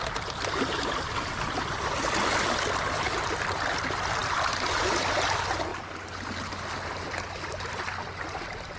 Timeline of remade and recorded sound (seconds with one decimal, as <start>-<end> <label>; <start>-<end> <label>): 0.0-8.8 recorded

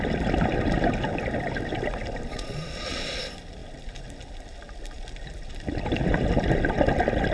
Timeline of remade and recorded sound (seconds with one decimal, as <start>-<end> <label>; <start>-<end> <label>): 0.0-2.3 recorded; 2.3-3.2 remade; 3.2-7.3 recorded

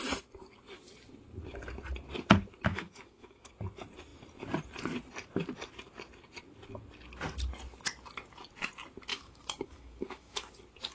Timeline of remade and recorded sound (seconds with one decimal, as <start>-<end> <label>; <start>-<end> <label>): 0.0-2.7 recorded; 2.7-3.5 remade; 3.5-9.1 recorded; 9.1-10.5 remade; 10.5-10.9 recorded